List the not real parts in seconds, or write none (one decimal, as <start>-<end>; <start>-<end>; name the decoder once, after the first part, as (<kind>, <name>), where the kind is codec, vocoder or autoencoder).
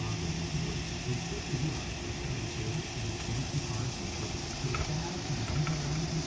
none